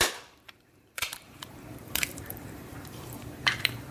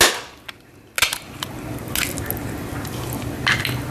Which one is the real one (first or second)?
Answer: second